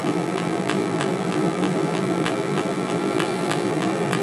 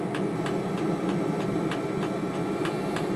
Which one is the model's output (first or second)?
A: first